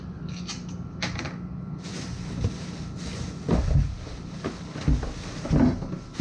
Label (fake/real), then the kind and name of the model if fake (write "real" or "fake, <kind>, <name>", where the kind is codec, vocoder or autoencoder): real